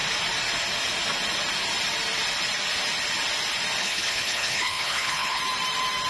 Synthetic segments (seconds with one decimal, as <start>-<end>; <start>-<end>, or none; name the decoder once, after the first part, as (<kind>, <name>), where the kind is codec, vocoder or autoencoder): 3.8-5.4 (codec, HILCodec)

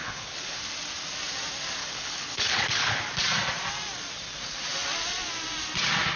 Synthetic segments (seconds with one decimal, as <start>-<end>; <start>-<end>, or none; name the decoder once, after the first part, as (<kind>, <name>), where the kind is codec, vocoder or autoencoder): 0.0-0.6 (codec, HILCodec); 1.8-3.0

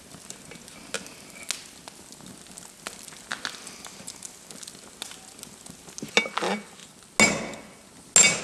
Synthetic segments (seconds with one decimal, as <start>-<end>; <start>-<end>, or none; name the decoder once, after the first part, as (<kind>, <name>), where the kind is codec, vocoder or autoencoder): none

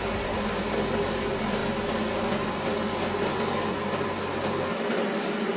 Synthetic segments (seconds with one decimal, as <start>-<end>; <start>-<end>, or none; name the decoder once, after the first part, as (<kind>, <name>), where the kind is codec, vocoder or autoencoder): none

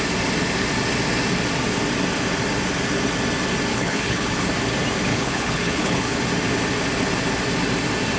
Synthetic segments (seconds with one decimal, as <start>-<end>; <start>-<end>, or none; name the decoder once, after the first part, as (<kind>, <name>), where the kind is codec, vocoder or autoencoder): 3.7-4.5 (codec, HILCodec); 5.1-6.2

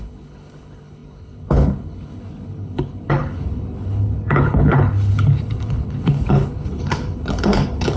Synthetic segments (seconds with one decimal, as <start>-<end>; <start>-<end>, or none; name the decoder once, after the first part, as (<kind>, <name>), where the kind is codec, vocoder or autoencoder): 0.0-8.0 (codec, HILCodec)